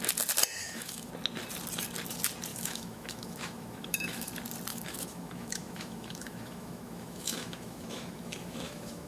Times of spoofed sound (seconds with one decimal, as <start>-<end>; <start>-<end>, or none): 0.6-1.1; 2.5-4.3; 4.7-9.1